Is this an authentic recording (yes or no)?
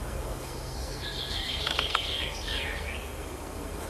no